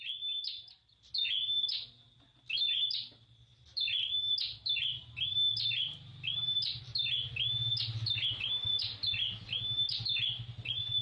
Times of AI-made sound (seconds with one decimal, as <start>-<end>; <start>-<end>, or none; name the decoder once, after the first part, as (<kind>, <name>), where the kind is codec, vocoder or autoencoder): none